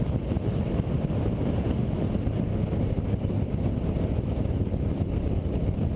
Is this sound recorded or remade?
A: recorded